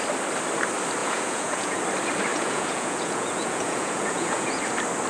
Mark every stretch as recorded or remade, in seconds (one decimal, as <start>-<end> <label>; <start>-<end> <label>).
0.0-1.0 recorded; 1.0-1.8 remade; 1.8-2.3 recorded; 2.3-4.6 remade; 4.6-5.1 recorded